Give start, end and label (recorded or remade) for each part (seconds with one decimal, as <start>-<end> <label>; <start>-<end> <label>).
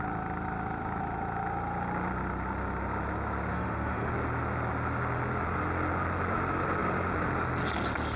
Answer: 0.0-3.5 recorded; 3.5-4.1 remade; 4.1-8.2 recorded